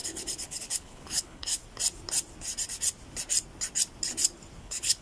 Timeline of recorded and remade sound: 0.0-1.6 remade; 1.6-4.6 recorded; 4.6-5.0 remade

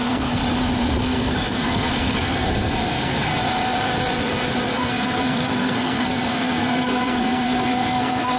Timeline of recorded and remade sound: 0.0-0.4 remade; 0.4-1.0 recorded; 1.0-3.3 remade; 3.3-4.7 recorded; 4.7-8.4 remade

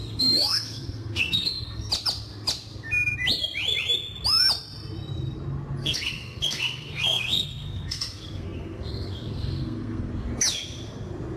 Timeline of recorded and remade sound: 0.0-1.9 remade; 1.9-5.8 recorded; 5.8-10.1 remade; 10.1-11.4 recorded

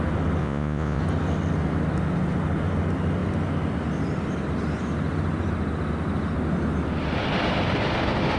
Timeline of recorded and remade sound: 0.0-0.4 recorded; 0.4-1.0 remade; 1.0-8.4 recorded

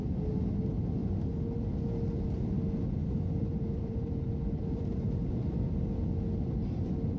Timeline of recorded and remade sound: 0.0-3.0 recorded; 3.0-5.3 remade; 5.3-7.2 recorded

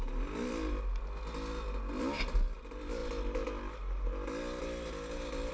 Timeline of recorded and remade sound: 0.0-5.5 recorded

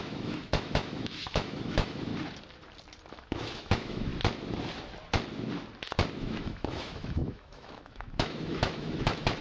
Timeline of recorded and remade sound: 0.0-2.1 remade; 2.1-3.1 recorded; 3.1-4.1 remade; 4.1-6.2 recorded; 6.2-9.4 remade

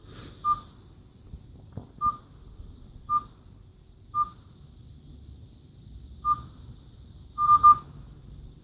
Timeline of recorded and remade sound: 0.0-8.6 recorded